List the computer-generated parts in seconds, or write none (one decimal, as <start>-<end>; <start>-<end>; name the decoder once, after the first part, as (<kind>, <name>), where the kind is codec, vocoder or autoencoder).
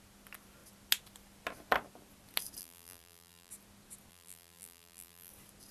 2.6-3.5 (vocoder, BigVGAN v2); 4.1-5.3